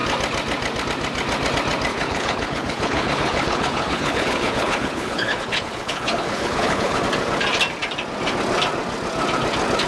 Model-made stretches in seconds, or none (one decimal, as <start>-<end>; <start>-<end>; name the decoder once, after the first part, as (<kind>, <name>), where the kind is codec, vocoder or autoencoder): 1.9-7.0 (codec, HILCodec)